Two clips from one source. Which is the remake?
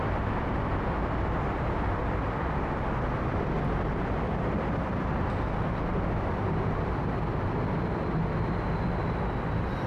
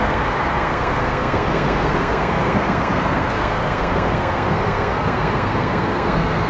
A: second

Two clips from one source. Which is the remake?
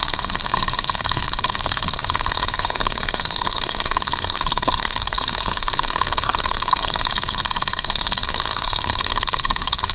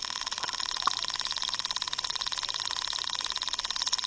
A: first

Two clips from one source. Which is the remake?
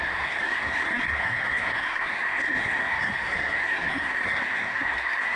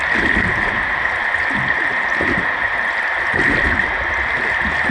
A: first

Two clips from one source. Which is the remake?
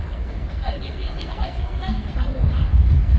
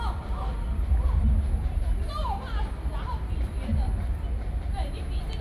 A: first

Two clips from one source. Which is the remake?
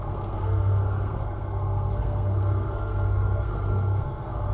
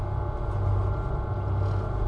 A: first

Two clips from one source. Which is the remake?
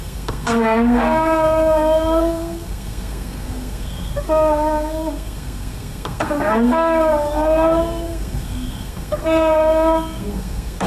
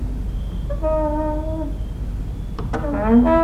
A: first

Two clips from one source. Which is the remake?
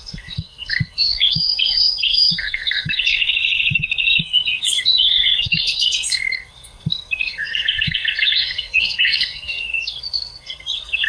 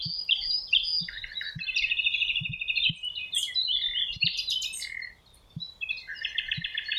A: first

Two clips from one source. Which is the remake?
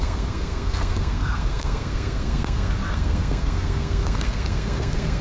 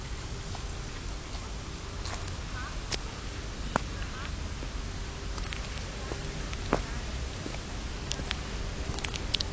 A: first